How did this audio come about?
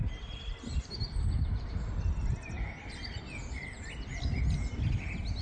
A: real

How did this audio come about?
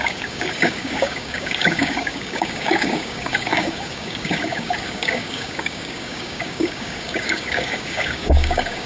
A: fake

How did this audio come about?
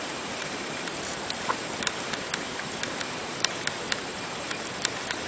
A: fake